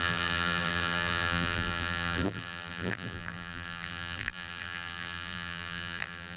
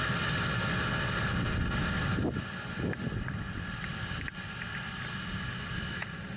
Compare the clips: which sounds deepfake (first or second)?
first